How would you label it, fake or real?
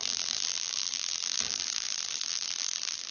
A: fake